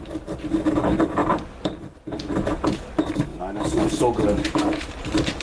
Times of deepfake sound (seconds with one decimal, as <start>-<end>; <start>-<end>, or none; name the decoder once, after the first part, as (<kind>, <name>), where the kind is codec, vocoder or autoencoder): 3.3-4.9 (autoencoder, DAC-VAE)